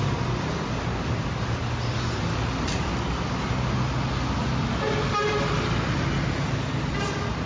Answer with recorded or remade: recorded